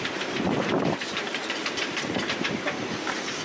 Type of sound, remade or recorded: remade